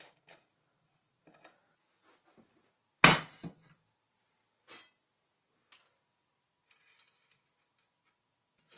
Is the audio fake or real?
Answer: real